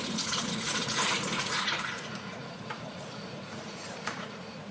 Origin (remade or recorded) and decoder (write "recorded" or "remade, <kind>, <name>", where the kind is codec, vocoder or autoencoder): remade, vocoder, Vocos